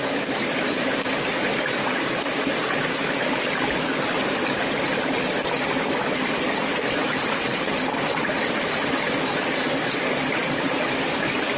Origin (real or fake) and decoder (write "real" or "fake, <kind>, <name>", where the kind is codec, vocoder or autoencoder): real